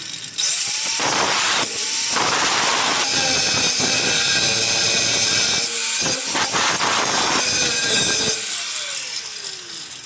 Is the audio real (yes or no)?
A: yes